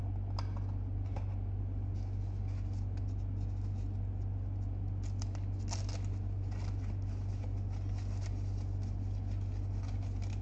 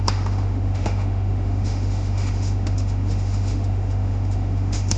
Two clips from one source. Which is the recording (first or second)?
first